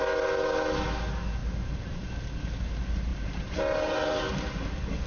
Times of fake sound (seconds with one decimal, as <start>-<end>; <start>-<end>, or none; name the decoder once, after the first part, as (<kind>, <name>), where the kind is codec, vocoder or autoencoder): 1.4-2.1 (vocoder, BigVGAN v2); 3.1-4.2